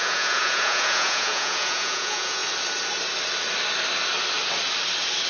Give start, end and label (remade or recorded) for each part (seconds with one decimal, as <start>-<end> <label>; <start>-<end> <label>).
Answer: 0.0-2.4 remade; 2.4-5.3 recorded